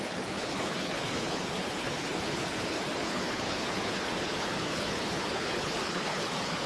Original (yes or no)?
no